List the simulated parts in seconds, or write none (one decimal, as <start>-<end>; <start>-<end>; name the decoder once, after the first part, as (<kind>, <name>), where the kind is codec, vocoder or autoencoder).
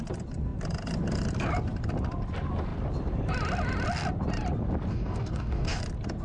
4.9-5.8 (codec, DAC)